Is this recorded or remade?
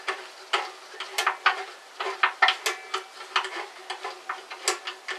recorded